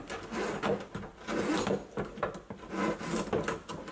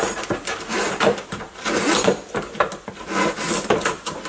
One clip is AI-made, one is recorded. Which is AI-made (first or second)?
second